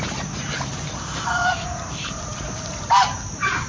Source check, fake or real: fake